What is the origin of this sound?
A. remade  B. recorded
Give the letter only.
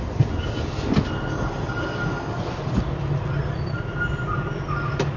B